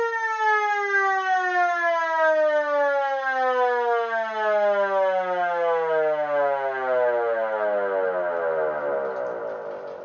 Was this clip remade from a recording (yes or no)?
no